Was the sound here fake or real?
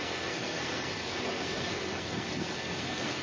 fake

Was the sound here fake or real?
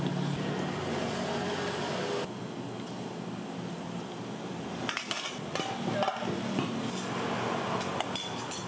real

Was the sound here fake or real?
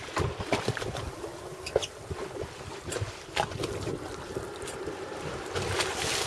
fake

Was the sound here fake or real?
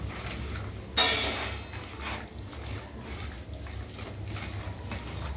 real